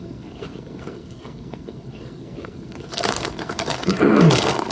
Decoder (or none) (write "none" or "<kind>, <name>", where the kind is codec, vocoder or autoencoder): codec, SNAC